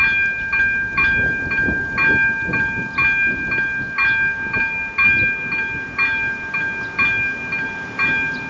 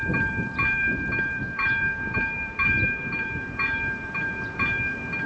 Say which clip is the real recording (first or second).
first